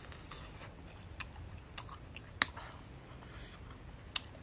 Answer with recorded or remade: recorded